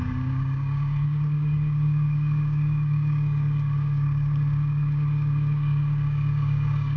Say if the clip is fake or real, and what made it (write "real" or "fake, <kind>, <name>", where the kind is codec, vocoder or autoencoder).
fake, codec, DAC